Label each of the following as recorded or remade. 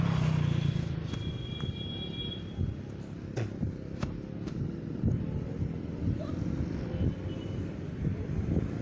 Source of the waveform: recorded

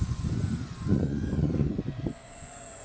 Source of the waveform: remade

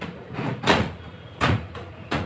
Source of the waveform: remade